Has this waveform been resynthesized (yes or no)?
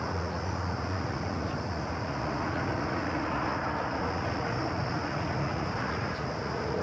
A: yes